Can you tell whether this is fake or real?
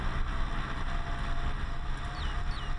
real